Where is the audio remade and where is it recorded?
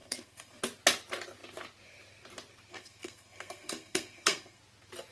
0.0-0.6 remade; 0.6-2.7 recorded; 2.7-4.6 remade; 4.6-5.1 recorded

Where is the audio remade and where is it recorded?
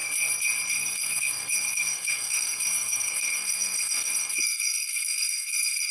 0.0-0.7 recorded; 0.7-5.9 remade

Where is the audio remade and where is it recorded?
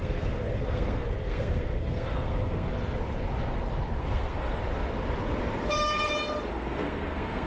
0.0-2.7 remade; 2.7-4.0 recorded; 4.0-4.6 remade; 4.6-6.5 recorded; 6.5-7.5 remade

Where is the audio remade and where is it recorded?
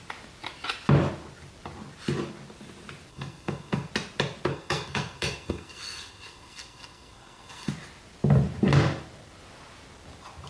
0.0-3.1 recorded; 3.1-3.9 remade; 3.9-4.5 recorded; 4.5-7.7 remade; 7.7-10.5 recorded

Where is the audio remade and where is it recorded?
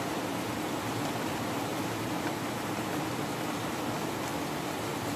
0.0-5.2 recorded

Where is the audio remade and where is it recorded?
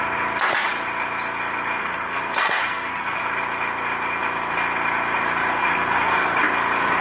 0.0-1.8 recorded; 1.8-3.2 remade; 3.2-5.6 recorded; 5.6-6.4 remade; 6.4-7.0 recorded